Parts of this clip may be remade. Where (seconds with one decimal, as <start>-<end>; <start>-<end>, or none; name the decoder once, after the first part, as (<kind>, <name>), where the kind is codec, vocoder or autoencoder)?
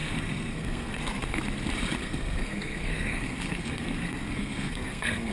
0.0-1.4 (codec, SNAC); 2.0-5.3